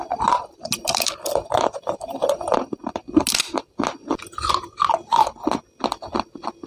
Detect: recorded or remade recorded